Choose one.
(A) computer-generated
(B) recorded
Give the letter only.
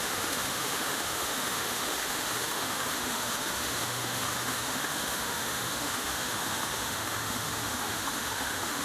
A